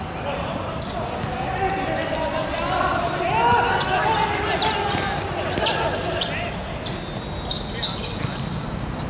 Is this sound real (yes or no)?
yes